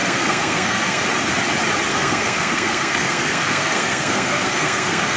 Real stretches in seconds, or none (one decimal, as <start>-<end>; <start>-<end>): 1.0-1.9